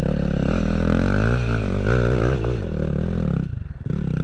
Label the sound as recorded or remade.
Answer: recorded